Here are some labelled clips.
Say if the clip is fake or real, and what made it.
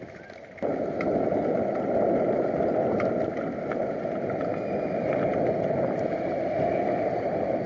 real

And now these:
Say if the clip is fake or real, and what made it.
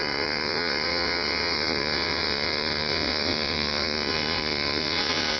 fake, vocoder, WaveNeXt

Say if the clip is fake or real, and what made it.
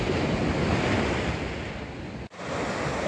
real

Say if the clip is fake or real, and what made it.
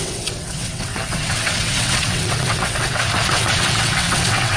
fake, vocoder, WaveNeXt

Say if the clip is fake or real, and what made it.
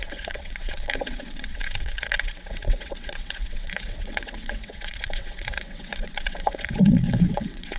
fake, vocoder, WaveNeXt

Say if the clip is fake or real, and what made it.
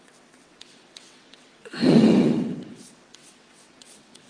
fake, vocoder, WaveNeXt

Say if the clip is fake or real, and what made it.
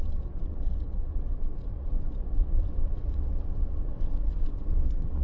fake, vocoder, WaveNeXt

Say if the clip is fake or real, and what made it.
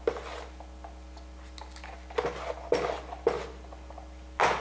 real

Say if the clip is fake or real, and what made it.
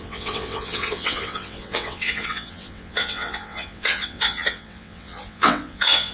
fake, vocoder, WaveNeXt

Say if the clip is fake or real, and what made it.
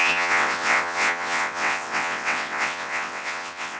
fake, vocoder, WaveNeXt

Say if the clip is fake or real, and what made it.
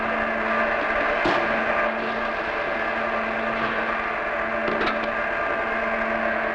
real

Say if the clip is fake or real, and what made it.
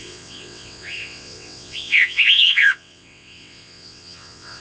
fake, vocoder, WaveNeXt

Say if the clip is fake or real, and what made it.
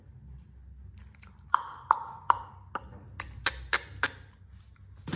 real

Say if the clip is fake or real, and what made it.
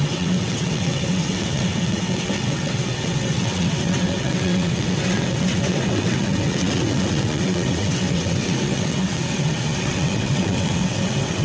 fake, vocoder, WaveNeXt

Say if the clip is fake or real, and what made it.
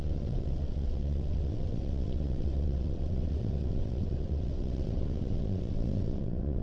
fake, vocoder, WaveNeXt